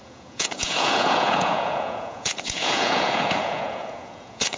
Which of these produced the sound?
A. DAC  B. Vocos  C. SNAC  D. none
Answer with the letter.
B